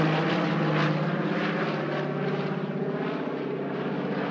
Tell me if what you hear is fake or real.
real